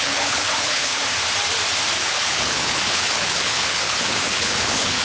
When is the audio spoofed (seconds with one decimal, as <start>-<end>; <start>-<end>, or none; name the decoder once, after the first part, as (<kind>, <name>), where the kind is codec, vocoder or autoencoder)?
0.0-1.0 (codec, HILCodec); 2.0-5.0